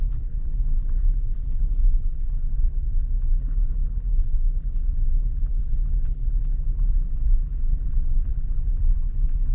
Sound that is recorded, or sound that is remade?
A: remade